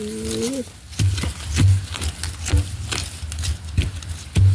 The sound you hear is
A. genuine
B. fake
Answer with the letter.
A